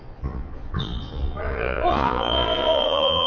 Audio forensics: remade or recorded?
remade